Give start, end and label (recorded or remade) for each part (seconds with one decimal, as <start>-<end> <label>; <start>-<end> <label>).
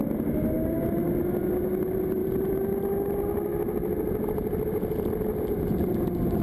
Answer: 0.0-6.4 recorded